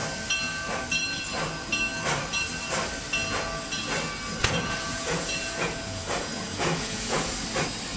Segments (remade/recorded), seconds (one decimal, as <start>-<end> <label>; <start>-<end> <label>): 0.0-4.4 recorded; 4.4-7.3 remade; 7.3-8.0 recorded